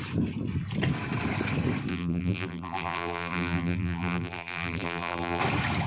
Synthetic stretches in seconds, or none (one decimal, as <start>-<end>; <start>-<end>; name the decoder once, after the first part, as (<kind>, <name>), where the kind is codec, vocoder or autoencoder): 1.9-5.4 (vocoder, BigVGAN v2)